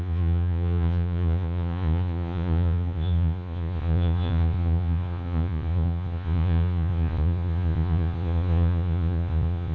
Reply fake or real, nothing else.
fake